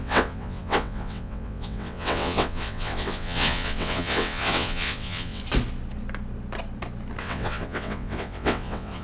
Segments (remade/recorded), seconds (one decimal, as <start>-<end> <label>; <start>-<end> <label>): 0.0-5.4 remade; 5.4-7.2 recorded; 7.2-9.0 remade